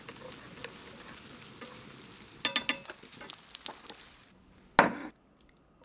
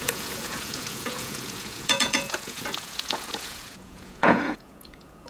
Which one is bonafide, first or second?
first